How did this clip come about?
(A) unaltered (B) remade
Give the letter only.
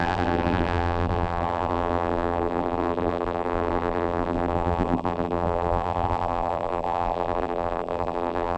B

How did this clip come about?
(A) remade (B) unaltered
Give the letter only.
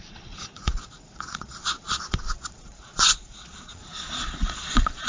A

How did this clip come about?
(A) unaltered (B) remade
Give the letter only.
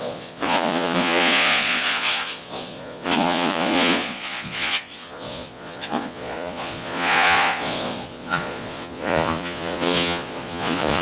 B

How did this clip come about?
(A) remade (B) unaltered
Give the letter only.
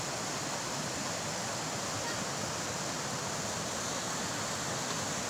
B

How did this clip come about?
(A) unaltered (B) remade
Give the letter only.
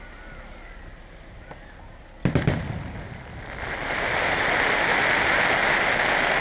A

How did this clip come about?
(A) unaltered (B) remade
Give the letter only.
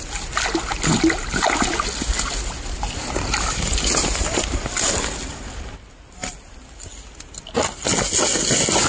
A